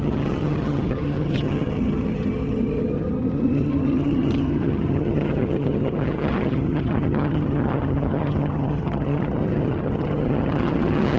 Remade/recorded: remade